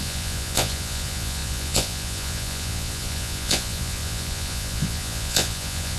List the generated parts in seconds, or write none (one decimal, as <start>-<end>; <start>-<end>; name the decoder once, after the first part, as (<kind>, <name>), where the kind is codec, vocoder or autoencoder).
0.0-6.0 (vocoder, Vocos)